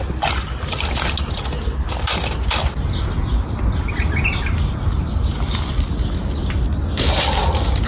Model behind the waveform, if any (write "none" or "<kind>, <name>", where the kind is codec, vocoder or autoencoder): none